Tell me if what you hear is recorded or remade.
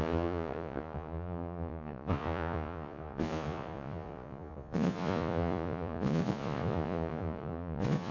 remade